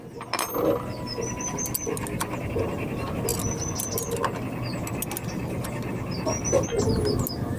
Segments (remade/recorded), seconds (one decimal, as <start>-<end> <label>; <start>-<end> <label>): 0.0-7.6 recorded